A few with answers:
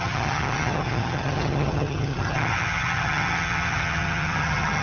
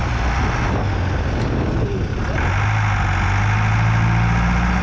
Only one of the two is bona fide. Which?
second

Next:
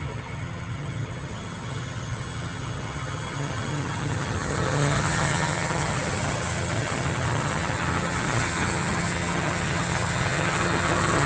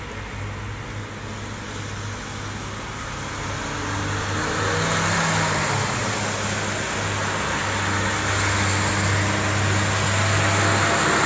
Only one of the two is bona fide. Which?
second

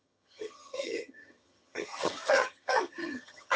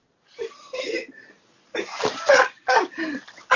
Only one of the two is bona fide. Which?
second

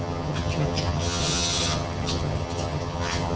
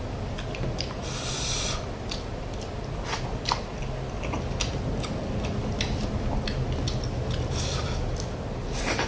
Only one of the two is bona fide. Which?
second